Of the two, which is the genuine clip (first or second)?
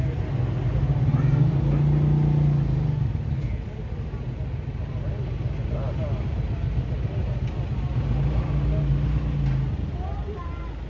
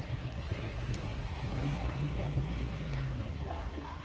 first